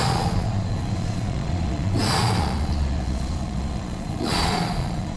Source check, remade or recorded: remade